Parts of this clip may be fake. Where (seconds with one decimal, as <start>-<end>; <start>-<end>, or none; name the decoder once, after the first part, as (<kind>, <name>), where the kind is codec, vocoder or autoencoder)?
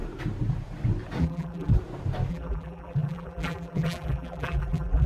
1.2-1.7 (vocoder, BigVGAN v2); 2.3-5.1